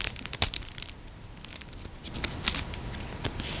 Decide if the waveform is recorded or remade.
recorded